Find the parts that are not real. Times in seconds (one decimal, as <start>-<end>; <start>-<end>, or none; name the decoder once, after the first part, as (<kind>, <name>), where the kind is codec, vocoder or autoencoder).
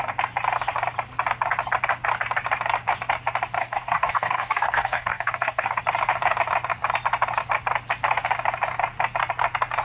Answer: 3.6-5.8 (codec, DAC)